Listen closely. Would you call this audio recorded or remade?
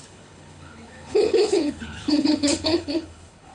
remade